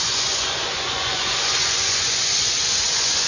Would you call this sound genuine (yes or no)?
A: no